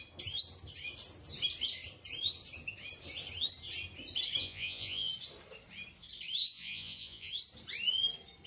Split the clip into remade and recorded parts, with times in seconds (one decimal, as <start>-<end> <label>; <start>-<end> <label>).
0.0-4.4 recorded; 4.4-5.1 remade; 5.1-6.4 recorded; 6.4-7.3 remade; 7.3-8.5 recorded